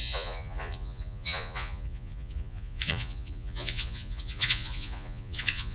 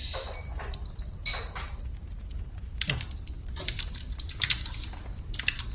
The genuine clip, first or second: second